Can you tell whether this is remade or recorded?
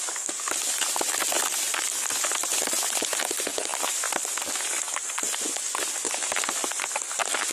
recorded